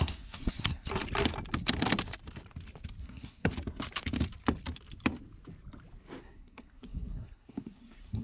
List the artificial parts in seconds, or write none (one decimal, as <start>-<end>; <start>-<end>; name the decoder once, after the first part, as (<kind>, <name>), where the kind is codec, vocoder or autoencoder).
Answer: 0.0-0.9 (codec, SNAC); 3.0-3.5; 6.2-8.2